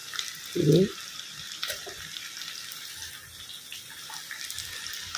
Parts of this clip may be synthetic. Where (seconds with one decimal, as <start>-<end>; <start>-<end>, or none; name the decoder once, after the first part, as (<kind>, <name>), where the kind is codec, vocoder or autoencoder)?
0.0-3.1 (vocoder, BigVGAN v2); 3.7-5.2